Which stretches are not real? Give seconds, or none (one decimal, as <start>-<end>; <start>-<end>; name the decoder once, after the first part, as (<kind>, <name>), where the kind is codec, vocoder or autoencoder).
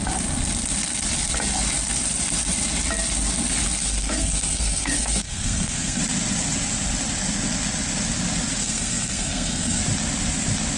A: 3.8-6.0 (codec, SNAC); 8.6-9.8